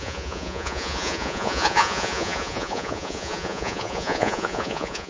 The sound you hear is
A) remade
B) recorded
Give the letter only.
A